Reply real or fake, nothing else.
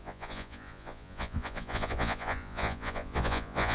fake